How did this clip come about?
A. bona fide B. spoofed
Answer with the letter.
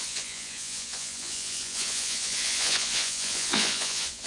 B